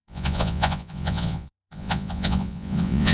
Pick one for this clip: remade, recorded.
remade